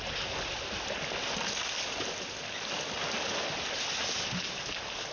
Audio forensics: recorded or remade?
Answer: recorded